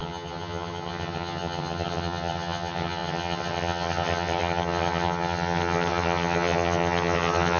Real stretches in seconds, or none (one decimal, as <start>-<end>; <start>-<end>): none